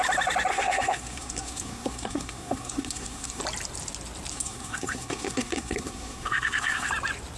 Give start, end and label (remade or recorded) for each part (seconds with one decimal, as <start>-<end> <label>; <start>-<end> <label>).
0.0-0.5 recorded; 0.5-3.4 remade; 3.4-4.3 recorded; 4.3-6.9 remade; 6.9-7.4 recorded